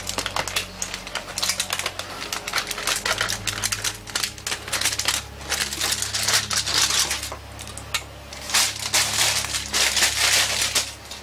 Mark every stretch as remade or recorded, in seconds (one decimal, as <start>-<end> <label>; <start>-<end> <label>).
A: 0.0-11.2 recorded